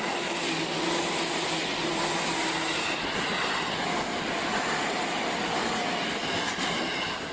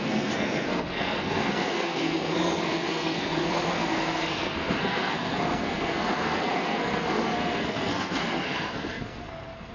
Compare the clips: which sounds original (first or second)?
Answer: first